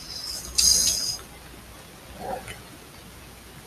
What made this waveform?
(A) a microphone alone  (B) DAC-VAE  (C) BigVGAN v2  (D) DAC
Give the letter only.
A